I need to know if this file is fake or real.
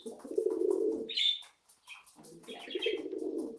real